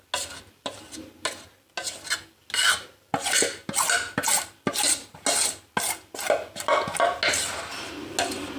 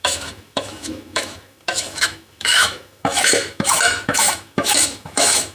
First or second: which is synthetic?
second